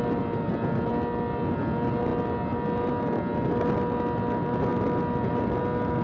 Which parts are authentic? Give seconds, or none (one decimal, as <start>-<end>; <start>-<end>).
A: 0.0-6.0